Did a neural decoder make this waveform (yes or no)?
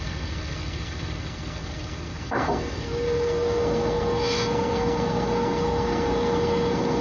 yes